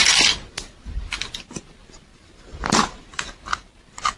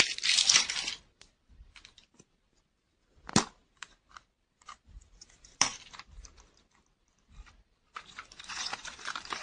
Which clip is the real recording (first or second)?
first